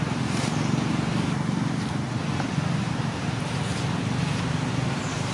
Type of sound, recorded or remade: remade